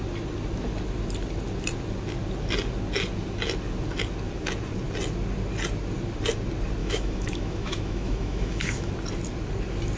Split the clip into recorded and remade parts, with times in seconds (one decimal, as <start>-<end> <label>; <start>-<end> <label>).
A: 0.0-6.8 recorded; 6.8-8.9 remade; 8.9-10.0 recorded